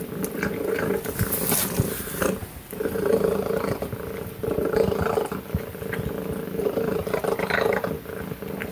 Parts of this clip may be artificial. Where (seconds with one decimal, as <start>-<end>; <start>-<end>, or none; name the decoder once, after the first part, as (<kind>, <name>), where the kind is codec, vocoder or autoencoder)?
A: none

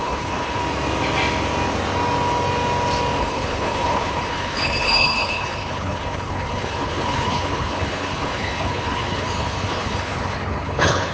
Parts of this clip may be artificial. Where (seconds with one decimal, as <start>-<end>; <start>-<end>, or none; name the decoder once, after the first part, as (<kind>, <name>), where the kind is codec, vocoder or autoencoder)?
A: 0.0-0.6 (codec, HILCodec); 3.2-11.1

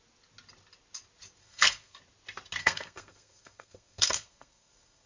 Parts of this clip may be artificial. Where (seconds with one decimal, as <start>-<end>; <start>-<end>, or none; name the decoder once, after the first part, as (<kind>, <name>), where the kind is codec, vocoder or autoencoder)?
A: 1.4-2.0 (codec, SNAC); 2.6-5.1

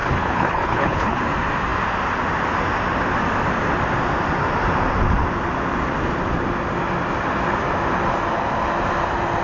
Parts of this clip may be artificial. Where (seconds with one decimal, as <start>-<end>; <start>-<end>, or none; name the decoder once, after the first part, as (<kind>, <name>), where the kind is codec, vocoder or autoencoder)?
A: 0.0-1.2 (codec, HILCodec)